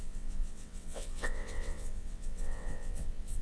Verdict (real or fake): fake